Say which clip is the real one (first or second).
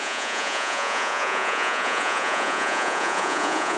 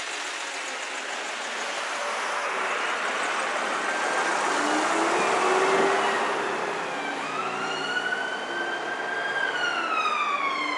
second